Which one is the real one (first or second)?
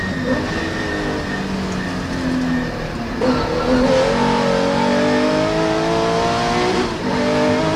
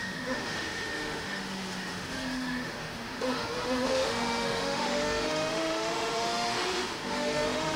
first